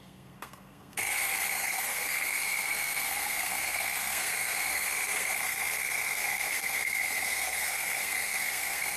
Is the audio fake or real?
fake